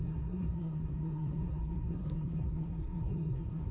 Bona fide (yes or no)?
no